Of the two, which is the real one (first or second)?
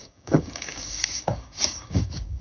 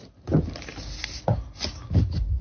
second